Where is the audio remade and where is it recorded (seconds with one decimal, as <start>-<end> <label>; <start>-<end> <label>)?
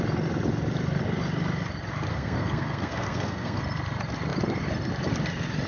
0.0-2.1 recorded; 2.1-3.6 remade; 3.6-5.7 recorded